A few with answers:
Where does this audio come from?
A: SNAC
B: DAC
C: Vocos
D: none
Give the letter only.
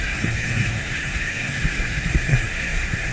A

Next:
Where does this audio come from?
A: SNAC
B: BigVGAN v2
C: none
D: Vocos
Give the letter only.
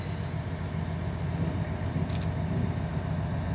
C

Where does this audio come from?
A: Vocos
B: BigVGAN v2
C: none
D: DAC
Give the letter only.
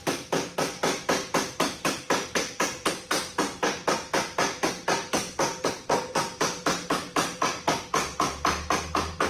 C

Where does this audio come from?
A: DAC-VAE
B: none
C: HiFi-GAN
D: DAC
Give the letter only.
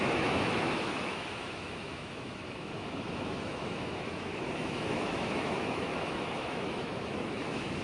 A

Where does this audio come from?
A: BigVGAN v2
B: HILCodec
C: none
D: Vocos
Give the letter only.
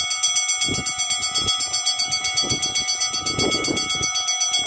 C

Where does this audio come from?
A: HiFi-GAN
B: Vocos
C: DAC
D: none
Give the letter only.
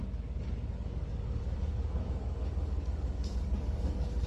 C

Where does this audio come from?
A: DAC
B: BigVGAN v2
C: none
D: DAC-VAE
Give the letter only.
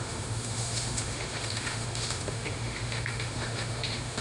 D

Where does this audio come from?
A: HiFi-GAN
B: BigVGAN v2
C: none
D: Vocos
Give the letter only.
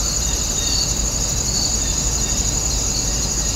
C